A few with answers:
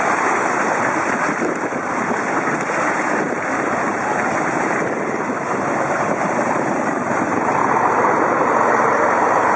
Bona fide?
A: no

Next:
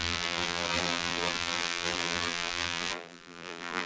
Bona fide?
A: no